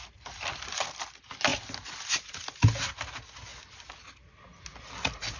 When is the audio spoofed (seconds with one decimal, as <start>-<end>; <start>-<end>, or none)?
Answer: none